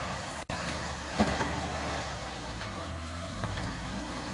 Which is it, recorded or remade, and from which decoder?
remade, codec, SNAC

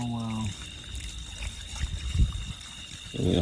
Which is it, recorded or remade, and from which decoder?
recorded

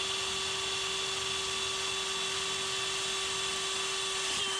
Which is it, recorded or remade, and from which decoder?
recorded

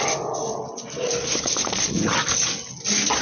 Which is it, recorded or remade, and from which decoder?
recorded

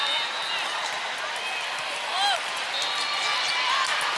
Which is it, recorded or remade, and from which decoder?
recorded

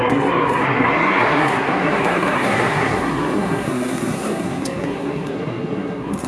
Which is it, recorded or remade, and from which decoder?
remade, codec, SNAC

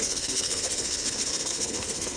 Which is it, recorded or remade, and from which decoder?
remade, codec, SNAC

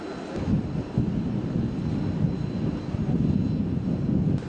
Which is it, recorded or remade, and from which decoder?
recorded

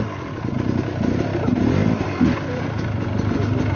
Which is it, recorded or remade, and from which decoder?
recorded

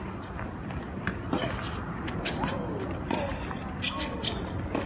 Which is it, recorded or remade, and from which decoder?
recorded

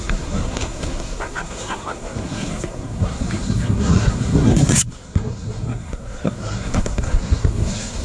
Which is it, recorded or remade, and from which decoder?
remade, codec, SNAC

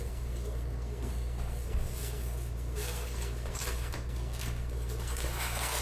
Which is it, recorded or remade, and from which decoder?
remade, codec, SNAC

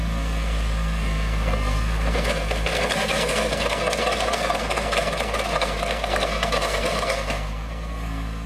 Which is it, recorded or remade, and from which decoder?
remade, codec, SNAC